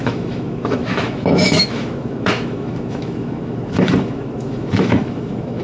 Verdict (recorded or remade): remade